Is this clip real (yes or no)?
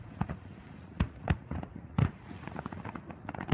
no